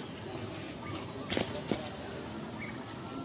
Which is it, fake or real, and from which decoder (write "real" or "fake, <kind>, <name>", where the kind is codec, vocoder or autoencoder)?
real